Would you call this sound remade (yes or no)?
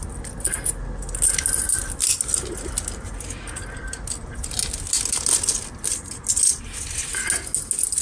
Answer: no